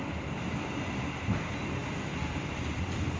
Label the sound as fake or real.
real